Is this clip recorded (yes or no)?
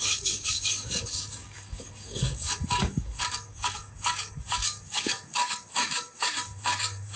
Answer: no